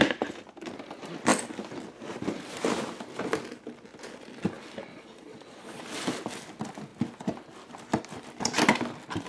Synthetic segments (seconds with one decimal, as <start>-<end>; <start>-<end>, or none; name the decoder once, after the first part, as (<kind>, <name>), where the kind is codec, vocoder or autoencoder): 4.9-5.8 (vocoder, Vocos)